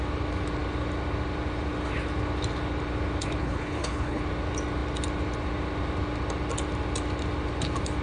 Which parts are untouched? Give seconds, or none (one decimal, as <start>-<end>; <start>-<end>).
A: 0.0-3.4; 4.2-8.0